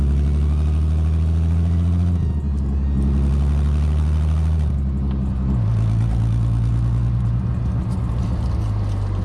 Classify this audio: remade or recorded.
recorded